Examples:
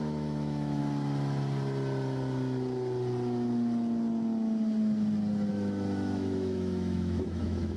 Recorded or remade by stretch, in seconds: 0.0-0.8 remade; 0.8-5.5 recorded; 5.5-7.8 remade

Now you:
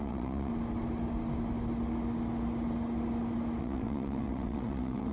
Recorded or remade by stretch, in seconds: 0.0-0.5 remade; 0.5-3.6 recorded; 3.6-5.1 remade

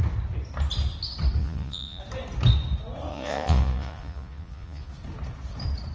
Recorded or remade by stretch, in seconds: 0.0-1.4 recorded; 1.4-2.0 remade; 2.0-3.1 recorded; 3.1-4.9 remade; 4.9-5.9 recorded

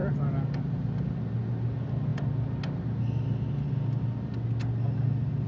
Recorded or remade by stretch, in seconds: 0.0-5.5 recorded

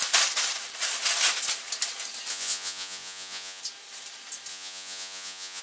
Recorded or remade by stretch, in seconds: 0.0-2.3 recorded; 2.3-3.6 remade; 3.6-4.5 recorded; 4.5-5.6 remade

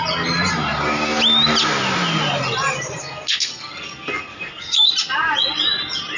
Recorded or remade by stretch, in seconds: 0.0-3.0 recorded; 3.0-4.9 remade; 4.9-6.2 recorded

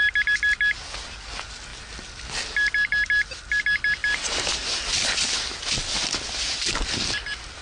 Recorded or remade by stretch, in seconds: 0.0-7.6 recorded

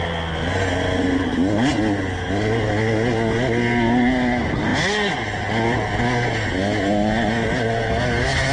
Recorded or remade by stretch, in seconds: 0.0-8.5 recorded